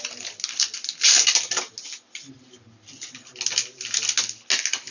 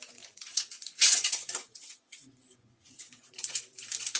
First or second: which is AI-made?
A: second